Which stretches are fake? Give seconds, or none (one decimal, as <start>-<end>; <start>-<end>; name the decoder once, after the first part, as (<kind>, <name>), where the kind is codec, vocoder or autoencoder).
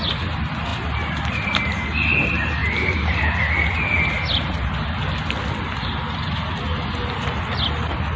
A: none